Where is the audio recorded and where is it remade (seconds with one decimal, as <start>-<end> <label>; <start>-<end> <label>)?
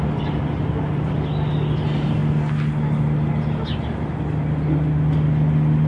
0.0-5.9 recorded